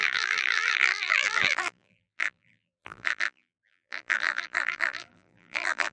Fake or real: fake